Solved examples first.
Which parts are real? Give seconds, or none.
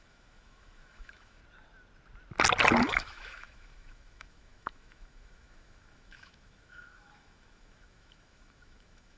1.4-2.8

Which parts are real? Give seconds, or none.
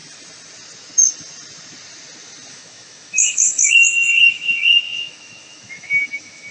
0.0-2.5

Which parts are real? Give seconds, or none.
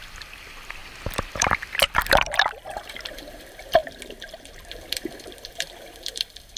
0.8-1.4; 3.8-4.7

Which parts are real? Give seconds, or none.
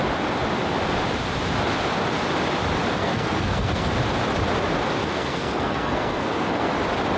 0.0-3.0; 3.9-5.0; 6.7-7.2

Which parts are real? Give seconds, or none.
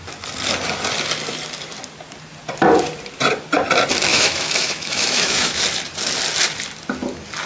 0.0-4.1; 5.6-7.5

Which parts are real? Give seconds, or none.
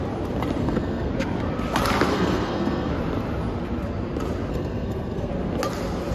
0.0-0.6; 1.1-2.1; 2.9-4.5; 5.3-6.1